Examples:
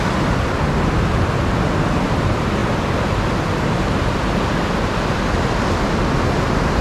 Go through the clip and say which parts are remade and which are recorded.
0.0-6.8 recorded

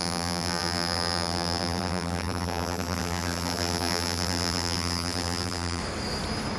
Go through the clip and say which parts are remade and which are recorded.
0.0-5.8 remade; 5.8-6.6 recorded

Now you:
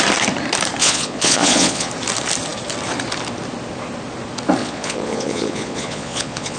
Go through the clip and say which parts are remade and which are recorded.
0.0-0.8 recorded; 0.8-1.9 remade; 1.9-4.6 recorded; 4.6-6.6 remade

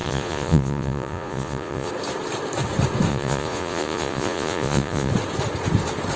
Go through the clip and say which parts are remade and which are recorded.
0.0-1.9 remade; 1.9-3.1 recorded; 3.1-5.1 remade; 5.1-6.2 recorded